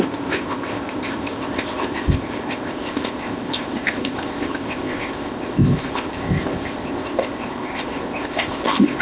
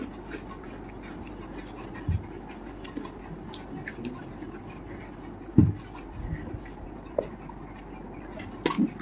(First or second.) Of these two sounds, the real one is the second